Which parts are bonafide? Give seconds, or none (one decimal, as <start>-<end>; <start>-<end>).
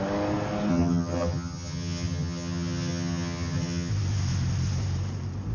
0.0-0.7; 3.9-5.5